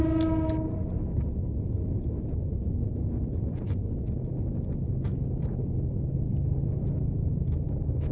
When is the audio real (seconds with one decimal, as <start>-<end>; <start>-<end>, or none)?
0.0-8.1